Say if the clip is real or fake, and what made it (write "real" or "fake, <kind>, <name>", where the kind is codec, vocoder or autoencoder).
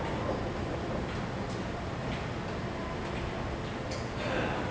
real